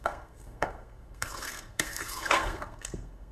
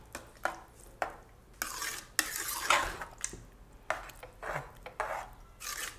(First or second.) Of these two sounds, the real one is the second